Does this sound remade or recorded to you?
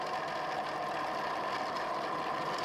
recorded